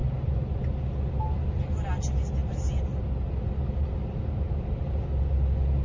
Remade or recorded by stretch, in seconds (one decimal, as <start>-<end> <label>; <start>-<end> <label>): 0.0-5.8 recorded